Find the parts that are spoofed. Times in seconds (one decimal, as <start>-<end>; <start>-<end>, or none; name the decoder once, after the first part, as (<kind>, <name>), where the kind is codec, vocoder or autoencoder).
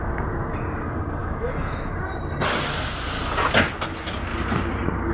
1.2-1.9 (autoencoder, DAC-VAE)